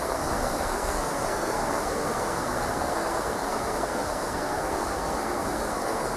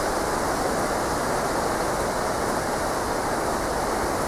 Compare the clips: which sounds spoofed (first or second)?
first